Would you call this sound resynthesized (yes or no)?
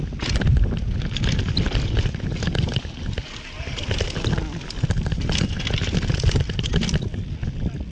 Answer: no